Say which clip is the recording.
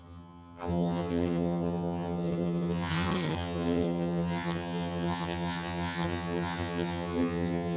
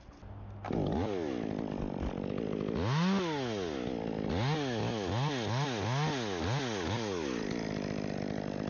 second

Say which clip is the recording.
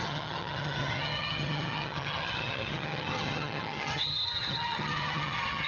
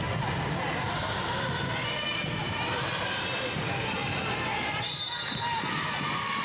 second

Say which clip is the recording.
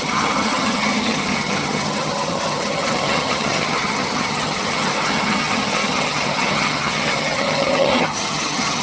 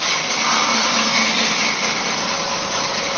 second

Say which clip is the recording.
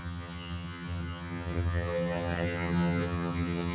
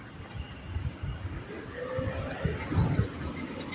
second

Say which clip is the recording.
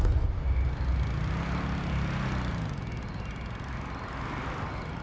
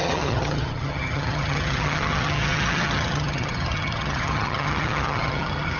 first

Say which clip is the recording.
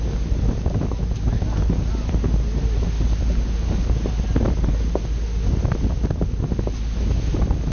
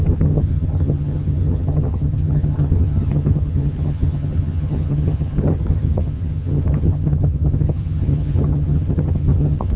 first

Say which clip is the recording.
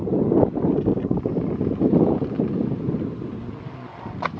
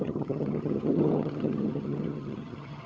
first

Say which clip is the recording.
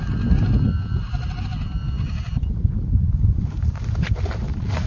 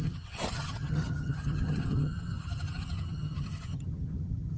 first